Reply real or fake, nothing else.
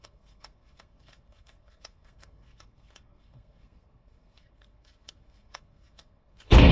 fake